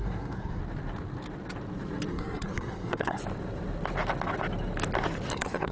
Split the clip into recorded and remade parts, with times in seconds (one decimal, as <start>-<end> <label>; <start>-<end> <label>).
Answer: 0.0-0.6 remade; 0.6-2.1 recorded; 2.1-3.2 remade; 3.2-5.3 recorded; 5.3-5.7 remade